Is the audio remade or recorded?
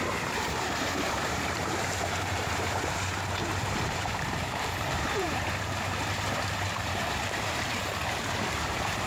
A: remade